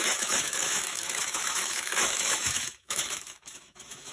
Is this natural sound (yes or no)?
no